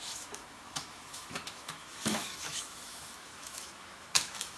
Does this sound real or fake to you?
fake